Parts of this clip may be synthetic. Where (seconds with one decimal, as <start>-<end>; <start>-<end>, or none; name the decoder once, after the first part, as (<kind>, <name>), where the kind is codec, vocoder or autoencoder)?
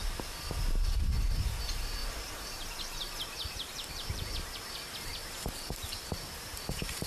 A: 2.0-4.2 (vocoder, BigVGAN v2); 5.1-7.1